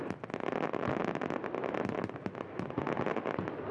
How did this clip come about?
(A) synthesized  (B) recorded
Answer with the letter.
B